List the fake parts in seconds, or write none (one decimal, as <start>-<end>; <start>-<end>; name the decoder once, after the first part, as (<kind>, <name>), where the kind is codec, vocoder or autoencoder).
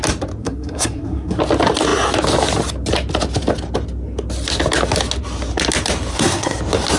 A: 0.4-1.4 (codec, SNAC); 6.1-6.6